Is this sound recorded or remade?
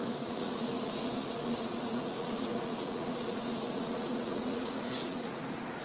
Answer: remade